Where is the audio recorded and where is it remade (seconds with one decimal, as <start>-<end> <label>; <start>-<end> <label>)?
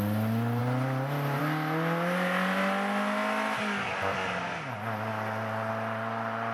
0.0-6.5 recorded